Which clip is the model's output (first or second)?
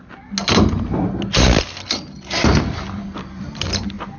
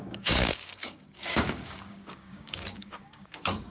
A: second